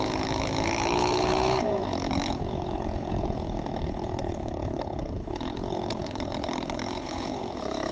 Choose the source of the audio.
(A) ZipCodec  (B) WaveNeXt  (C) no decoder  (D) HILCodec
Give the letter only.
D